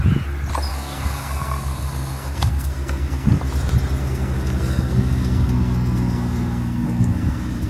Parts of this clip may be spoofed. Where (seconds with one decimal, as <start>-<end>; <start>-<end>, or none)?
0.7-3.4; 4.0-7.7